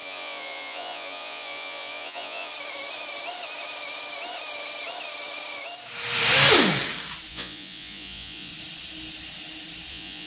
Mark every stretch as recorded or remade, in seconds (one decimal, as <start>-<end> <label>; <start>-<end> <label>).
0.0-2.5 remade; 2.5-7.3 recorded; 7.3-8.5 remade; 8.5-9.9 recorded; 9.9-10.3 remade